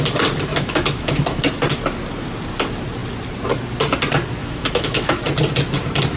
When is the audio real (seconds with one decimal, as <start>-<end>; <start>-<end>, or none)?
0.0-0.5; 1.4-4.4; 5.2-6.2